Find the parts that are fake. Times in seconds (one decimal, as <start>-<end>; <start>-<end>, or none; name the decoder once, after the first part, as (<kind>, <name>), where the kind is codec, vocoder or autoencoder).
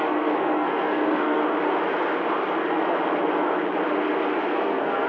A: 0.0-1.4 (codec, SNAC); 4.5-5.1